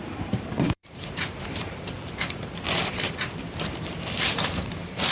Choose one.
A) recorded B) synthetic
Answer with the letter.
B